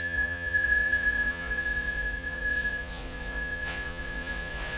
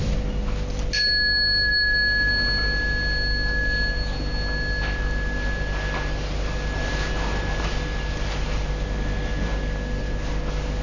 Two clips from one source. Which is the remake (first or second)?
first